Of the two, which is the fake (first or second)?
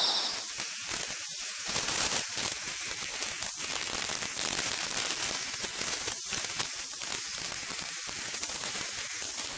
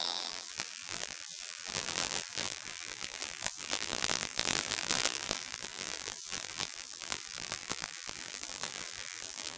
second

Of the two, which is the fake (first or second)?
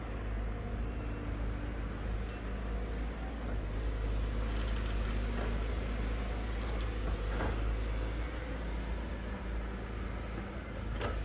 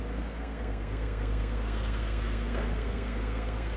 second